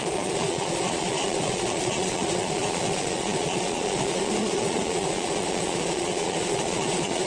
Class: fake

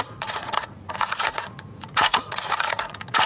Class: fake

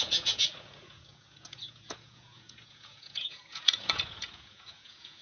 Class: fake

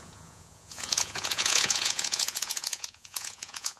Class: fake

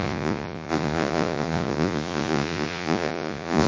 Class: fake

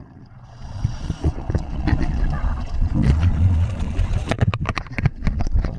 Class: fake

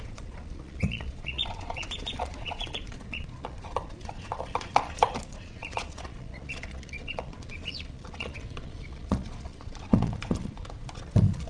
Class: fake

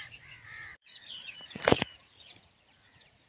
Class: fake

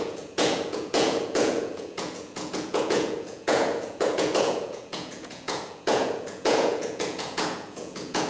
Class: fake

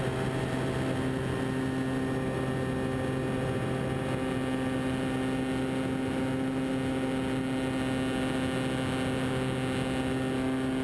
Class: real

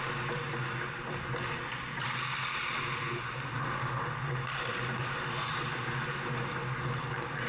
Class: real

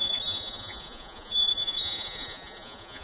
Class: fake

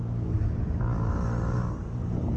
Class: real